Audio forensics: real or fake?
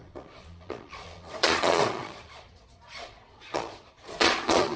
fake